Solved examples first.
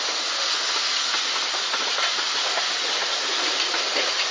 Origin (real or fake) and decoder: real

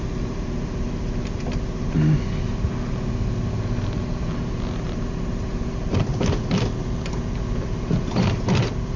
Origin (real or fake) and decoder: real